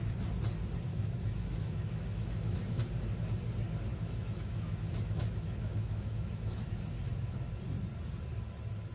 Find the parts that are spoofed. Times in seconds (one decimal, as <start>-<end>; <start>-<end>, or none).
0.9-2.8; 3.9-6.7

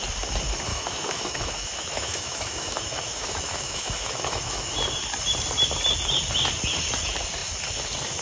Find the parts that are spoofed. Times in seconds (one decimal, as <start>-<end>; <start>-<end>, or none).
0.7-4.7

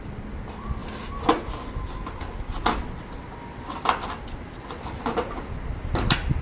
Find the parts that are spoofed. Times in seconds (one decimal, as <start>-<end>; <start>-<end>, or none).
none

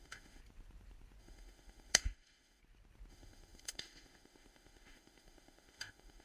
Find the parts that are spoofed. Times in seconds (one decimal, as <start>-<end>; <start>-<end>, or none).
0.0-0.4; 1.2-2.6; 3.1-6.2

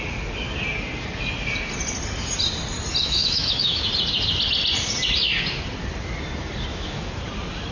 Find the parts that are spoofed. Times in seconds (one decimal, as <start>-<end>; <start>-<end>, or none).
3.0-3.9; 6.7-7.2

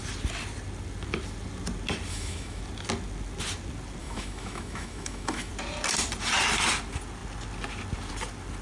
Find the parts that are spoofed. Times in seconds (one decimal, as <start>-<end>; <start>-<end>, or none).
2.1-2.6; 4.0-5.5

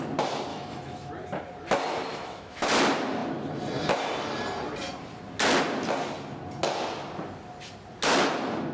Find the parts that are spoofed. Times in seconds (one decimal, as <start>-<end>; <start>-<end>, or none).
0.5-1.1; 2.1-2.7